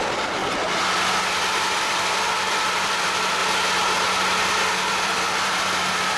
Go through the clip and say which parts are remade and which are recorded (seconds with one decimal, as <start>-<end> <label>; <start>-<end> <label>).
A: 0.0-0.4 remade; 0.4-1.2 recorded; 1.2-3.4 remade; 3.4-4.7 recorded; 4.7-6.2 remade